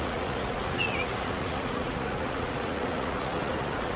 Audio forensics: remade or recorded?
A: remade